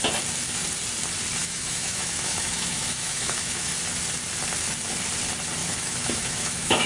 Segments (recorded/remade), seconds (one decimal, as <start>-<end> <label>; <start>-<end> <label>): 0.0-1.4 recorded; 1.4-3.7 remade; 3.7-5.6 recorded; 5.6-6.9 remade